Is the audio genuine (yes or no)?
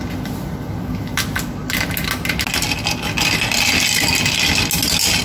yes